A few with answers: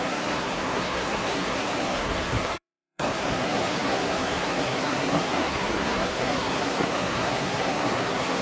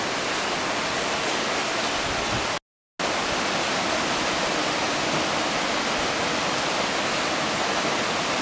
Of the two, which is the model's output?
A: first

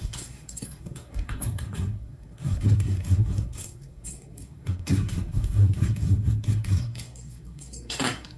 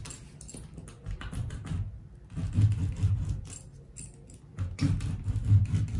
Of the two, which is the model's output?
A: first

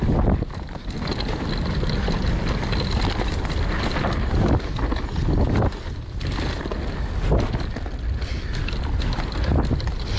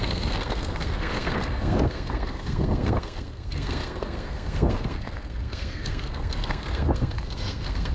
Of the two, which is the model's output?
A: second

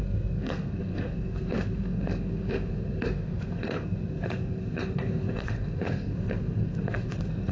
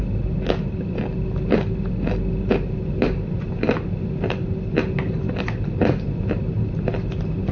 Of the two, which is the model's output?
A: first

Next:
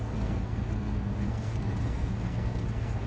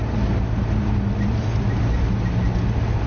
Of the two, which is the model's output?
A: first